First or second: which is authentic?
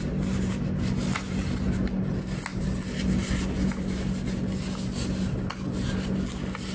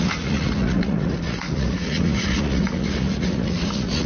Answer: first